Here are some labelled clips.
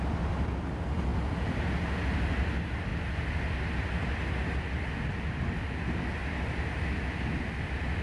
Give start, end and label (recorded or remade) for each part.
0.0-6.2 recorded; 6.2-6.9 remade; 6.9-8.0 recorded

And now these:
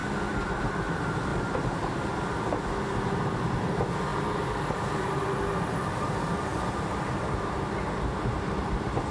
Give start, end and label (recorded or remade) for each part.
0.0-0.5 recorded; 0.5-9.1 remade

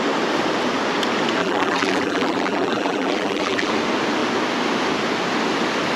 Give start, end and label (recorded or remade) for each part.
0.0-1.4 recorded; 1.4-3.7 remade; 3.7-6.0 recorded

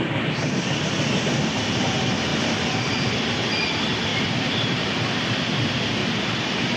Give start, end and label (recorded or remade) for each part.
0.0-2.3 recorded; 2.3-3.2 remade; 3.2-4.1 recorded; 4.1-5.0 remade; 5.0-6.0 recorded; 6.0-6.8 remade

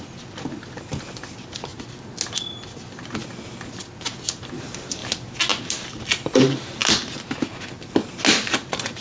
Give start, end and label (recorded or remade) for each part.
0.0-1.7 remade; 1.7-3.7 recorded; 3.7-5.0 remade; 5.0-5.7 recorded; 5.7-6.8 remade; 6.8-8.3 recorded; 8.3-9.0 remade

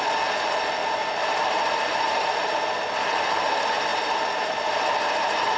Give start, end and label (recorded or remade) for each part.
0.0-0.8 recorded; 0.8-2.6 remade; 2.6-3.9 recorded; 3.9-5.6 remade

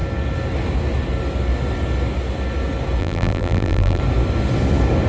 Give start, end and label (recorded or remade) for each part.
0.0-3.0 recorded; 3.0-4.0 remade; 4.0-5.1 recorded